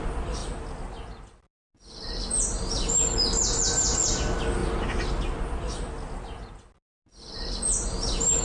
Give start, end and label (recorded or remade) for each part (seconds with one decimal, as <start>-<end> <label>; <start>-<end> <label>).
0.0-8.4 recorded